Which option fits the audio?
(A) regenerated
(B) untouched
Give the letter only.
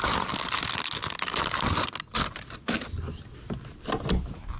B